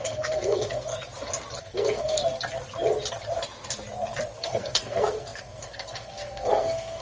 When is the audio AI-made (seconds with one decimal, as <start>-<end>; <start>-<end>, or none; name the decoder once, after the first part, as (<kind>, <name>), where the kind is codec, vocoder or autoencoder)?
0.0-0.9 (codec, SNAC); 1.6-2.2; 4.4-7.0